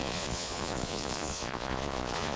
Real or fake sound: fake